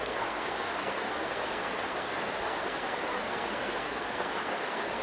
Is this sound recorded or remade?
remade